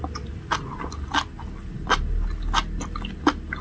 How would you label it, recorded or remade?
recorded